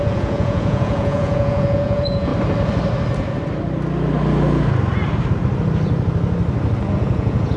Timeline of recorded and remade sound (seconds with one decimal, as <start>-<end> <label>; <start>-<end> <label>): 0.0-2.3 remade; 2.3-6.9 recorded; 6.9-7.6 remade